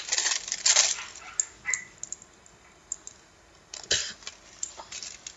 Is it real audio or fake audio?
real